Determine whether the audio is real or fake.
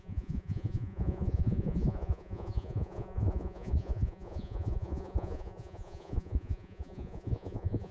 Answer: fake